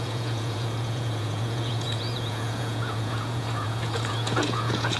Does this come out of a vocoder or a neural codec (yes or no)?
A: yes